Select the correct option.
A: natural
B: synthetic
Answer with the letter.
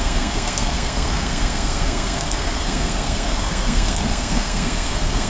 B